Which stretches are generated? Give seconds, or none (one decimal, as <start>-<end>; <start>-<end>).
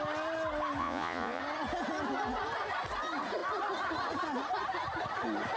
0.8-1.4